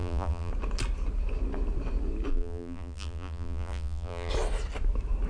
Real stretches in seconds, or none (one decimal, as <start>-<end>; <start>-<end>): 0.5-2.3; 4.3-5.3